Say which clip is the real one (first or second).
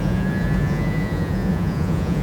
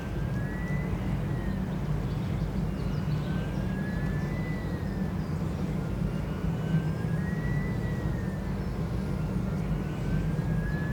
second